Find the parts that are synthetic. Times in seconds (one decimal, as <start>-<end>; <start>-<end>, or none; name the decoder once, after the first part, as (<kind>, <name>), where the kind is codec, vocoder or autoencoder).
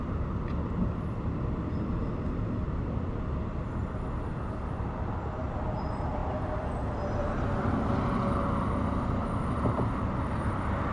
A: none